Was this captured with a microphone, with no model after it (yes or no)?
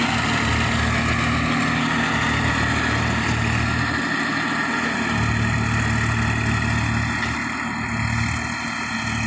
yes